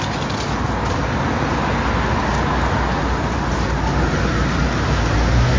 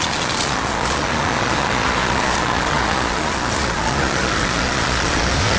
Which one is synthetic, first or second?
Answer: second